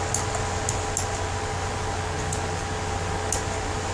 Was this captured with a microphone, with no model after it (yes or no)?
yes